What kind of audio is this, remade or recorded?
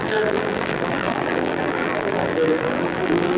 remade